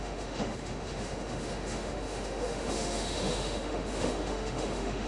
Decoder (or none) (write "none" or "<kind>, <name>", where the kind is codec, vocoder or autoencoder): autoencoder, DAC-VAE